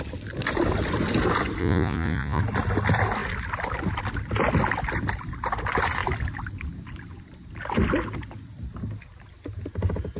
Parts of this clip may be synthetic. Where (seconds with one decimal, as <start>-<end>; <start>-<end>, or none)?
1.6-2.4